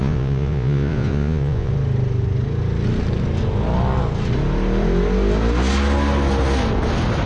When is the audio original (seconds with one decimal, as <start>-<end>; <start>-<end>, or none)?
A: 1.7-7.3